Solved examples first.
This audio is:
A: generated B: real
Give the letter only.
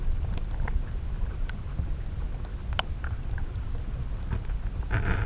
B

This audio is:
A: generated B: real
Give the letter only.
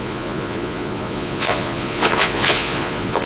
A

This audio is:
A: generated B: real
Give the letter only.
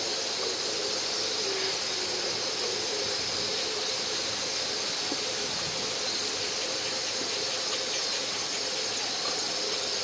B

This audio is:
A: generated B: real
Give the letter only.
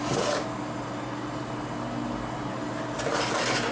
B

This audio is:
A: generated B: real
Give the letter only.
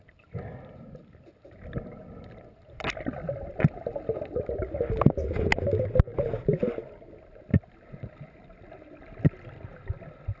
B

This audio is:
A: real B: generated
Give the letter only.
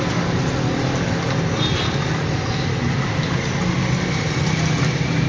A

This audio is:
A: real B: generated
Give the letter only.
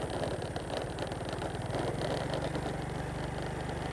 A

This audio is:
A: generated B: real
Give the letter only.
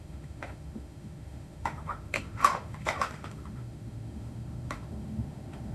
A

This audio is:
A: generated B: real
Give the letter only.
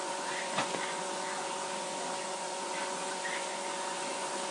A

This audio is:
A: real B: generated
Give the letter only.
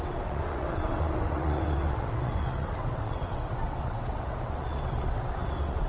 B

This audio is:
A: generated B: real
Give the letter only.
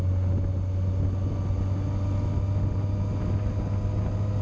B